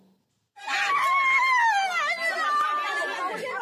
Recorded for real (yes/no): yes